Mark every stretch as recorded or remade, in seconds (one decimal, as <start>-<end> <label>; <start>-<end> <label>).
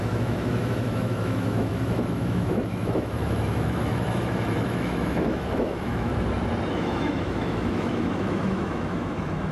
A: 0.0-6.1 remade; 6.1-6.7 recorded; 6.7-9.5 remade